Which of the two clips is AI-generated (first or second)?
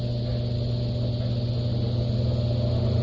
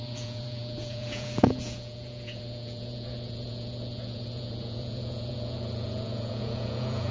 second